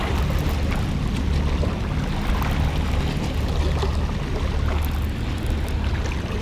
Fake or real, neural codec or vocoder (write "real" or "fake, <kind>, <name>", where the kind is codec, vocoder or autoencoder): real